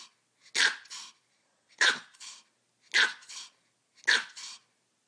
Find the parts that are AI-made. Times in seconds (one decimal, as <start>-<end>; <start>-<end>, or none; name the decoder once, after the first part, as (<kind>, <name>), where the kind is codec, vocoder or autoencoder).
1.3-2.2 (vocoder, Vocos)